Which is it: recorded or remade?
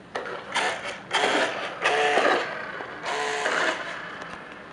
recorded